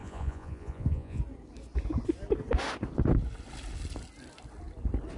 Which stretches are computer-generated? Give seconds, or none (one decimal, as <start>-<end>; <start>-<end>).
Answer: 0.0-1.2